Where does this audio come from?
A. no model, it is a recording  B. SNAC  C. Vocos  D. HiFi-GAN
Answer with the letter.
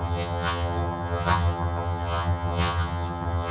D